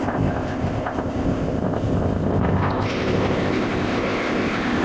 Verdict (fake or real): fake